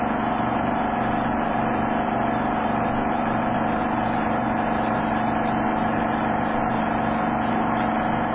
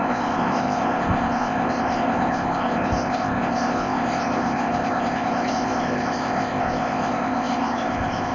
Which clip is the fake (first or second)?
second